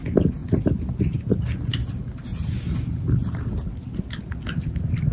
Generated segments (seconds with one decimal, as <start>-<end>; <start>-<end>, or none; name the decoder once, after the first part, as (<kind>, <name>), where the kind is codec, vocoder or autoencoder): 0.4-1.0 (vocoder, BigVGAN v2)